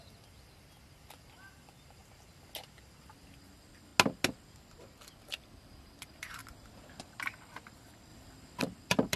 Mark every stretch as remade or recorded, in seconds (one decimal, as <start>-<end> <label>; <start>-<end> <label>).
0.0-2.0 remade; 2.0-2.9 recorded; 2.9-3.9 remade; 3.9-5.6 recorded; 5.6-6.4 remade; 6.4-7.0 recorded; 7.0-9.2 remade